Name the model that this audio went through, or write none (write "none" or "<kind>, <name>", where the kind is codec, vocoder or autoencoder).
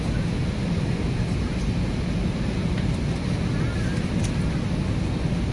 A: none